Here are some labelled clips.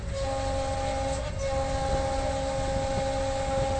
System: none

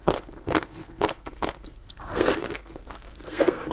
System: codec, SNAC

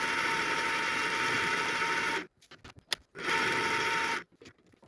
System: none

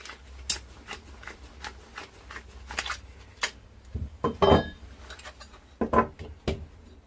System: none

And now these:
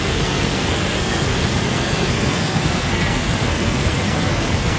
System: codec, SNAC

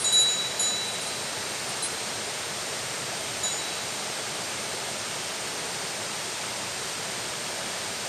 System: none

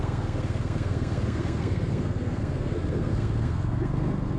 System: codec, SNAC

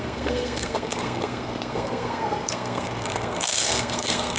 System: codec, SNAC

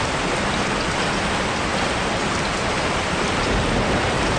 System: none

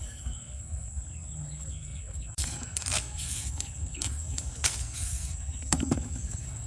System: codec, SNAC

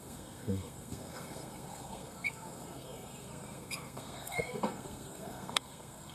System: codec, SNAC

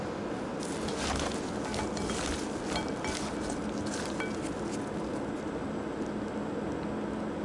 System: none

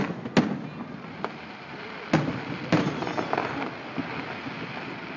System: none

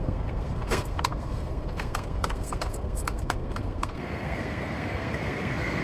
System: codec, SNAC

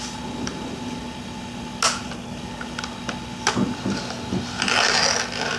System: none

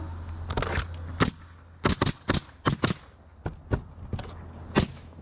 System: none